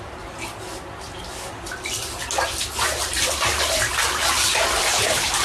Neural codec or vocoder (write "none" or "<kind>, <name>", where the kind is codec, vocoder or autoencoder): none